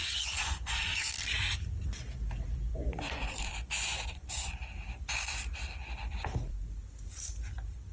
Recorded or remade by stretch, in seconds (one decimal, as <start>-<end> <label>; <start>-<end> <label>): 0.0-1.1 remade; 1.1-2.7 recorded; 2.7-4.5 remade; 4.5-6.5 recorded; 6.5-7.3 remade; 7.3-7.9 recorded